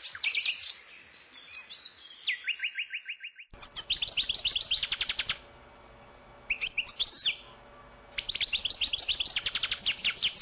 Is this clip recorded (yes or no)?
yes